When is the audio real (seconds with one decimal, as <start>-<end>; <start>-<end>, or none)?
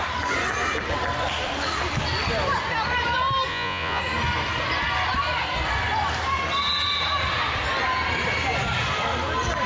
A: 0.0-3.5; 4.0-9.7